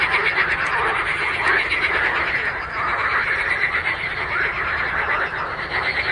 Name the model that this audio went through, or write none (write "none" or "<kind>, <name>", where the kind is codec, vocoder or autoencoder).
none